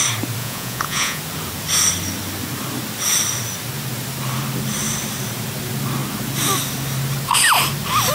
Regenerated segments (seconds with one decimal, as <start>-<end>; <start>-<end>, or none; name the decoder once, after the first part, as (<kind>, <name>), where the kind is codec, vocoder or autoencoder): 0.4-1.2 (vocoder, Vocos)